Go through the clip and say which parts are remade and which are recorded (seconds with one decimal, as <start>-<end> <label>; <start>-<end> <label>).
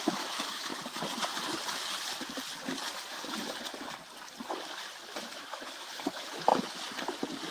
0.0-0.7 remade; 0.7-5.2 recorded; 5.2-6.5 remade; 6.5-7.5 recorded